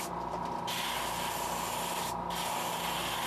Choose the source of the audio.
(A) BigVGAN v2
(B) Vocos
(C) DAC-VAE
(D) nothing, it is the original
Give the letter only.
D